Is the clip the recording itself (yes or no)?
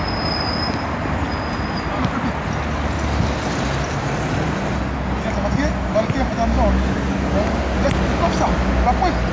yes